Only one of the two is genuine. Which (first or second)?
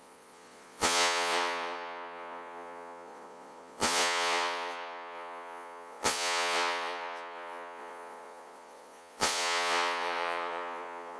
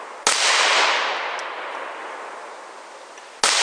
second